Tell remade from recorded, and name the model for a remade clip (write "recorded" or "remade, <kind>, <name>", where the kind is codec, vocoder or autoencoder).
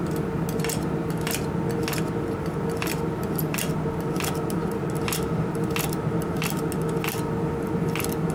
recorded